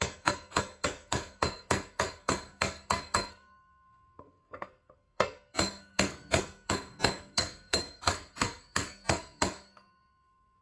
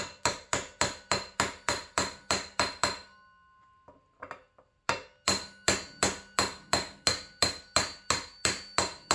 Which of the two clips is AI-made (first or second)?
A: first